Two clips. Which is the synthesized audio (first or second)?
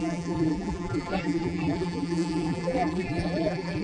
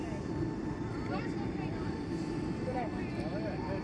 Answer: first